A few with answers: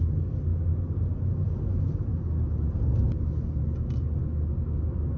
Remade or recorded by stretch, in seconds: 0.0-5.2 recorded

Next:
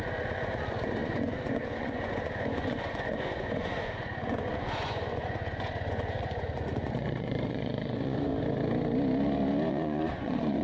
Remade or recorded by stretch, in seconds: 0.0-8.3 remade; 8.3-9.7 recorded; 9.7-10.6 remade

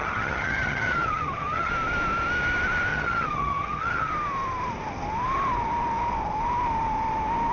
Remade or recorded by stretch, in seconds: 0.0-1.7 remade; 1.7-2.9 recorded; 2.9-4.1 remade; 4.1-7.5 recorded

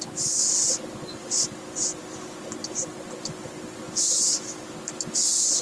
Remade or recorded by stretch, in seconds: 0.0-1.2 recorded; 1.2-2.0 remade; 2.0-2.6 recorded; 2.6-4.5 remade; 4.5-5.6 recorded